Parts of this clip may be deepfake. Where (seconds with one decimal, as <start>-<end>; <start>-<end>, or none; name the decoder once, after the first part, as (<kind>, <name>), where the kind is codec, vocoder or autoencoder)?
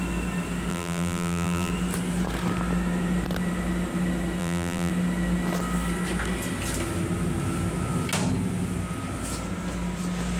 0.7-1.7 (vocoder, BigVGAN v2); 4.4-4.9